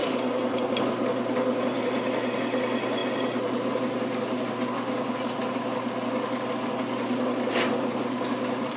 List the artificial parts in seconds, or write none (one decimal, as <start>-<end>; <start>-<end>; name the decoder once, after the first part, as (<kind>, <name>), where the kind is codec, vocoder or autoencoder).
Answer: none

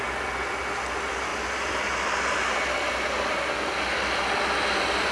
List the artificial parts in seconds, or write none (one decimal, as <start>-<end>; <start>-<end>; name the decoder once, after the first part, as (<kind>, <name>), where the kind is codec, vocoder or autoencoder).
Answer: none

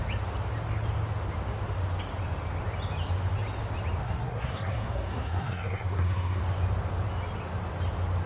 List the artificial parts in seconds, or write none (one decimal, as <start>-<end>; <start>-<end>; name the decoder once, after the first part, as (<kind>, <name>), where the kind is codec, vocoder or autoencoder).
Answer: 4.0-6.4 (codec, SNAC)

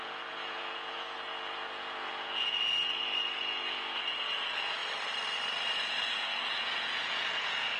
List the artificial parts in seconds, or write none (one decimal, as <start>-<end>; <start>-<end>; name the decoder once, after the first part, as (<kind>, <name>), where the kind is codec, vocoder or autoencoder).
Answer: 0.0-4.8 (vocoder, Vocos); 5.8-7.8

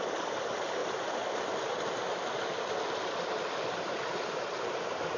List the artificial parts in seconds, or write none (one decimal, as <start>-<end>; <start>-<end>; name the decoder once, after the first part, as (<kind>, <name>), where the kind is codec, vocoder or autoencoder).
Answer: 0.0-0.8 (vocoder, BigVGAN v2); 3.0-5.2

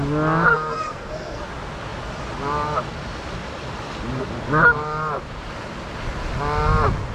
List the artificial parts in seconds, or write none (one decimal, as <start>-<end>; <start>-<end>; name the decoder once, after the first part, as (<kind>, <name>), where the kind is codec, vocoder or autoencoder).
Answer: 0.5-1.4 (codec, SNAC)

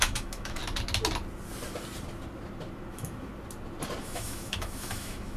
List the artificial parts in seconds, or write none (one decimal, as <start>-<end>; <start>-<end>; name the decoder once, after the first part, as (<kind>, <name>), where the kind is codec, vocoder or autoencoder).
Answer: 0.0-0.6 (autoencoder, DAC-VAE); 2.9-3.3; 4.0-5.4

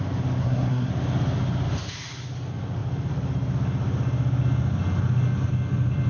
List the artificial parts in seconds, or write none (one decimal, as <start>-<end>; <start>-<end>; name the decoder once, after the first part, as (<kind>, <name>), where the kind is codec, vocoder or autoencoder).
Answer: 0.4-0.9 (codec, SNAC)